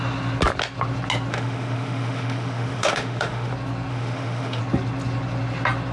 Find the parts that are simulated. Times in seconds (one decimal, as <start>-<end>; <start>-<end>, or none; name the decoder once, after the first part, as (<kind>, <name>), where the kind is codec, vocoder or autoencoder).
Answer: 1.3-3.5 (autoencoder, DAC-VAE); 3.9-4.6